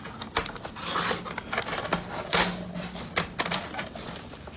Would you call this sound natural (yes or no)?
yes